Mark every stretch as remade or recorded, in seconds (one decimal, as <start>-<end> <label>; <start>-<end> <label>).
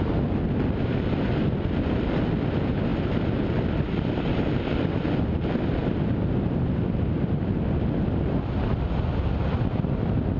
0.0-10.4 recorded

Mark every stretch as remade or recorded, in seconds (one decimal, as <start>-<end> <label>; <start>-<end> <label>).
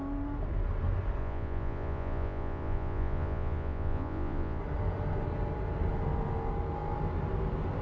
0.0-1.2 recorded; 1.2-4.6 remade; 4.6-7.8 recorded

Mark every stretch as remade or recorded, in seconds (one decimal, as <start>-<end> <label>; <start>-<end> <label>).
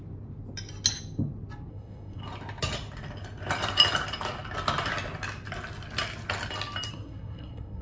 0.0-1.7 recorded; 1.7-2.2 remade; 2.2-6.9 recorded; 6.9-7.8 remade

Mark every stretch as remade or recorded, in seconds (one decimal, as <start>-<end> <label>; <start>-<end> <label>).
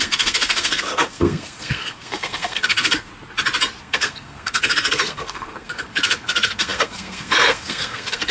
0.0-3.1 remade; 3.1-3.8 recorded; 3.8-8.3 remade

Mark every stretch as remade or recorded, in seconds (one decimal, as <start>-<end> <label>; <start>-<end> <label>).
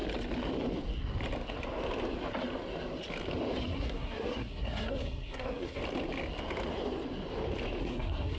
0.0-3.6 recorded; 3.6-5.8 remade; 5.8-7.8 recorded; 7.8-8.4 remade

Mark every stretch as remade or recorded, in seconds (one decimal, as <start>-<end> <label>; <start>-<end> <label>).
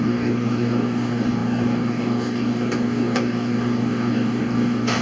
0.0-5.0 remade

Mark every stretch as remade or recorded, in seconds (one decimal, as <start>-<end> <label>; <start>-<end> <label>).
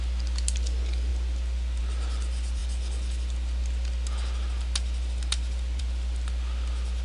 0.0-7.0 recorded